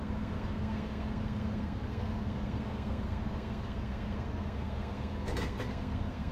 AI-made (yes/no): yes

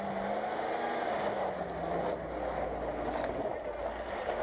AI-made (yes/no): no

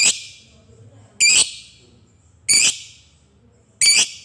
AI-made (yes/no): no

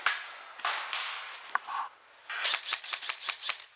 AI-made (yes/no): no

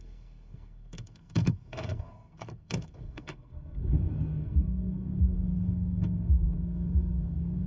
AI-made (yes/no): yes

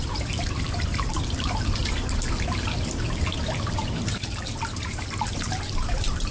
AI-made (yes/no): yes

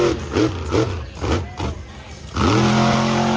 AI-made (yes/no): no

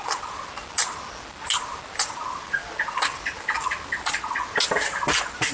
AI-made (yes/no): no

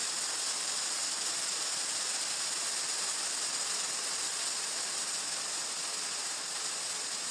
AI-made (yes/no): no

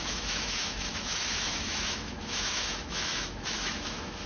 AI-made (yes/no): yes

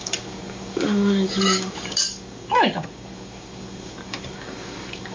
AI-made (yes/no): yes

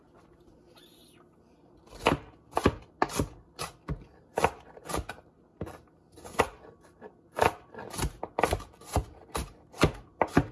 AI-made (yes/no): no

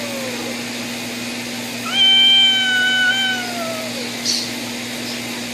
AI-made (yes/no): no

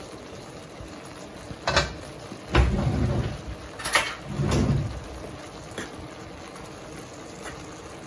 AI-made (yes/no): no